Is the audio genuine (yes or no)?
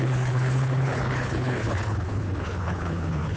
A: no